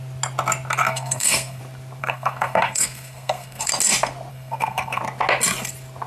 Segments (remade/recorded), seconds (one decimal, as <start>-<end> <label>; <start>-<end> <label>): 0.0-0.8 recorded; 0.8-1.6 remade; 1.6-2.0 recorded; 2.0-3.7 remade; 3.7-4.3 recorded; 4.3-5.0 remade; 5.0-6.1 recorded